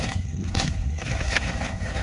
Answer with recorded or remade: remade